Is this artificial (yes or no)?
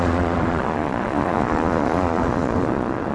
yes